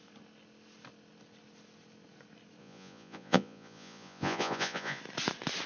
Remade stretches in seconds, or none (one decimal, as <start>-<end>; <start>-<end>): 2.6-5.0